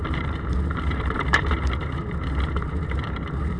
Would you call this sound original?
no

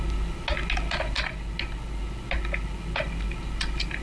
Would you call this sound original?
yes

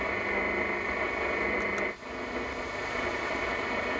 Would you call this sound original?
yes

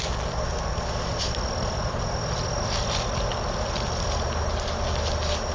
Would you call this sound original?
yes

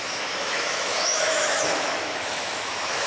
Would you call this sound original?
no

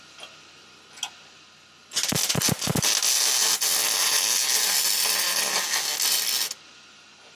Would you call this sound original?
yes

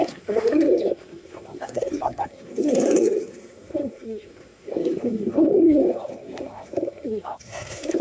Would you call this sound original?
no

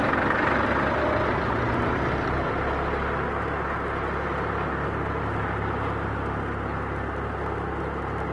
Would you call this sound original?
yes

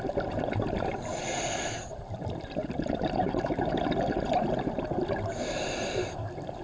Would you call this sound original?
no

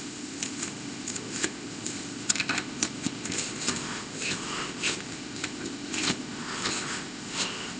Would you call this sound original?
no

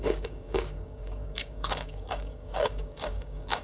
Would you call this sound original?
no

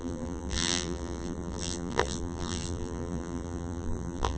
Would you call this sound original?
no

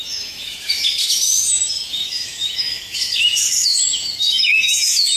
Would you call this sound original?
no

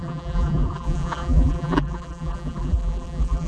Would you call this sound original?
no